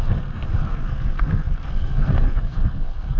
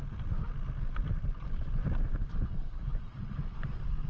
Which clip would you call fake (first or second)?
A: first